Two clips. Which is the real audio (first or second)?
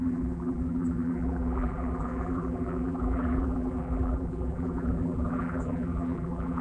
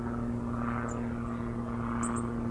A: second